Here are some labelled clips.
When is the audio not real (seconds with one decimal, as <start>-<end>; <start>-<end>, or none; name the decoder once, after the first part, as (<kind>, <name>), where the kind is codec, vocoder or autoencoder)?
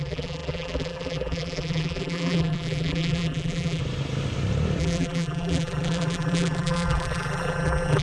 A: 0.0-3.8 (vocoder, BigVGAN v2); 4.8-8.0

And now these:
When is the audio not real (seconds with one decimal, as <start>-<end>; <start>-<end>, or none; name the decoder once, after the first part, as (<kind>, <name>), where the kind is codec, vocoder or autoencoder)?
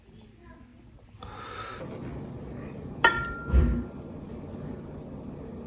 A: none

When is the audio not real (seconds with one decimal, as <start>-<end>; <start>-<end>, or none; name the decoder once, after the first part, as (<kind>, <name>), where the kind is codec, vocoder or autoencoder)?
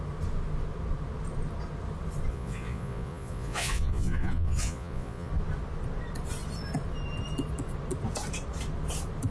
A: 2.3-5.3 (vocoder, Vocos)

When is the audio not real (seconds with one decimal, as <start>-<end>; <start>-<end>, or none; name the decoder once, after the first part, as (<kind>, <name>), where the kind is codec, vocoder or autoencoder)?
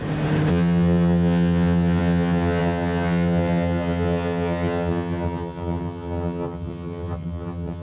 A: 0.5-7.8 (vocoder, HiFi-GAN)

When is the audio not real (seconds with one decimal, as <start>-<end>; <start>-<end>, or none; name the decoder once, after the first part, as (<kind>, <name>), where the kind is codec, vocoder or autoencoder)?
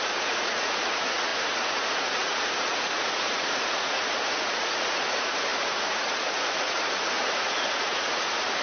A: 0.0-8.6 (vocoder, Vocos)